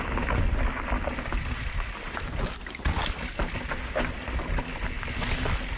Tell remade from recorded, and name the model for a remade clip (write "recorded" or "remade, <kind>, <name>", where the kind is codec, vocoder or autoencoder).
recorded